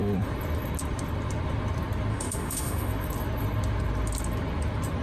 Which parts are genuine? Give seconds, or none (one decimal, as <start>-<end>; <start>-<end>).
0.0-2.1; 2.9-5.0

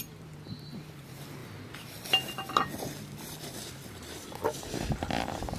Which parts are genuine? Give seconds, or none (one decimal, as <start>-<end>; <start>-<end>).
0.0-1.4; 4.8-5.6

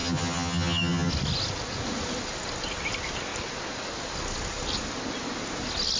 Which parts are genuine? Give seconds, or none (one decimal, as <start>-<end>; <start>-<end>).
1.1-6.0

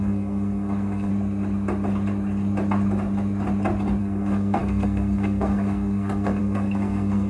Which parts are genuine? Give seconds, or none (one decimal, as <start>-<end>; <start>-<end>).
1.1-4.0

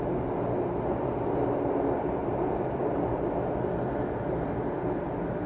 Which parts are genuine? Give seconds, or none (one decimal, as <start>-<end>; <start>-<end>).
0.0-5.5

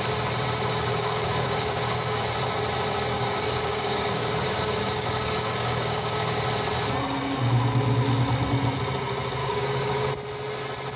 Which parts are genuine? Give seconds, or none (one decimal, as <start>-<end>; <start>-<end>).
0.0-0.7; 2.2-3.1; 6.4-9.4; 10.1-11.0

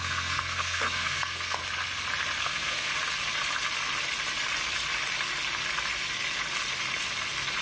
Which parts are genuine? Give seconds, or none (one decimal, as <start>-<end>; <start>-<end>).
1.6-2.4; 2.9-7.6